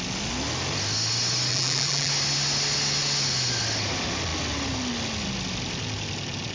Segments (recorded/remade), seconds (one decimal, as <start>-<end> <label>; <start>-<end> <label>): 0.0-1.5 recorded; 1.5-2.1 remade; 2.1-6.5 recorded

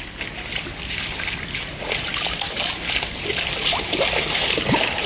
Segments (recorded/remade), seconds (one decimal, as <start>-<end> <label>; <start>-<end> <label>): 0.0-5.1 recorded

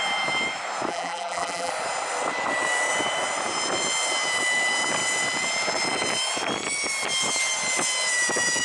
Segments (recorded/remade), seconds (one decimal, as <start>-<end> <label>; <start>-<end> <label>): 0.0-0.9 recorded; 0.9-1.7 remade; 1.7-8.6 recorded

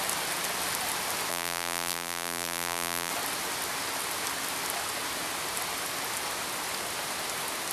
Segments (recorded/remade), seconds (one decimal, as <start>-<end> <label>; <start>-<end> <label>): 0.0-1.3 recorded; 1.3-3.1 remade; 3.1-7.7 recorded

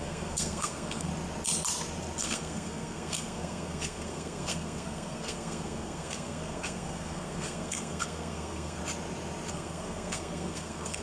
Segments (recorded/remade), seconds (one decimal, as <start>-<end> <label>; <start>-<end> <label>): 0.0-1.1 remade; 1.1-2.2 recorded; 2.2-8.8 remade; 8.8-9.5 recorded; 9.5-11.0 remade

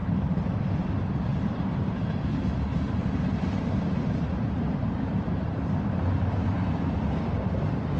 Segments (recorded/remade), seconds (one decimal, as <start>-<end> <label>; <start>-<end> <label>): 0.0-0.9 remade; 0.9-1.3 recorded; 1.3-1.8 remade; 1.8-3.0 recorded; 3.0-7.5 remade; 7.5-8.0 recorded

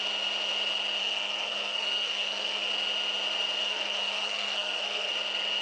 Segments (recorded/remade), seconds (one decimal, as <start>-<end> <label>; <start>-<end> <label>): 0.0-1.0 recorded; 1.0-2.7 remade; 2.7-3.6 recorded; 3.6-5.1 remade; 5.1-5.6 recorded